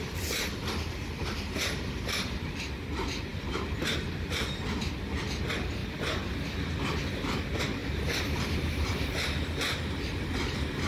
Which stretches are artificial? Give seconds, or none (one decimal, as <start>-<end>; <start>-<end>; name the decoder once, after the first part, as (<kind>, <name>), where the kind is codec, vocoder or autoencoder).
none

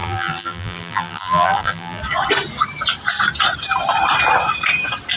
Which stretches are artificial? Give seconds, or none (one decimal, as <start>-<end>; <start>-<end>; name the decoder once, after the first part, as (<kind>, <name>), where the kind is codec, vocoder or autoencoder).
0.0-2.0 (vocoder, BigVGAN v2)

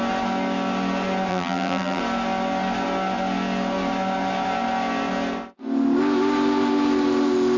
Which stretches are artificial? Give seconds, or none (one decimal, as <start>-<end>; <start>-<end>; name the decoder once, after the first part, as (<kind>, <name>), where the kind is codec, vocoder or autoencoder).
1.3-2.0 (vocoder, BigVGAN v2)

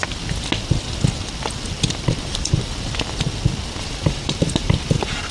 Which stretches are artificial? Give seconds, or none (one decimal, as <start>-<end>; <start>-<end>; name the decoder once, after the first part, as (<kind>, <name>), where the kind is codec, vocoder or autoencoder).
2.1-2.7 (vocoder, BigVGAN v2); 3.7-5.3

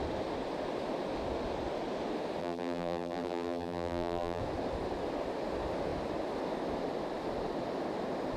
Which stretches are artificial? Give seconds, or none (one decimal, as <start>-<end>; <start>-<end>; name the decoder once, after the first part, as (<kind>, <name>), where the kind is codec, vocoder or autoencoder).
2.4-4.4 (vocoder, BigVGAN v2)